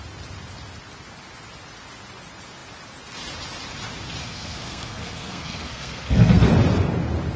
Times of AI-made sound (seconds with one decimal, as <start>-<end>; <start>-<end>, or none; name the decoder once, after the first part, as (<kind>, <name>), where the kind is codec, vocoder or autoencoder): 4.2-6.5 (codec, SNAC)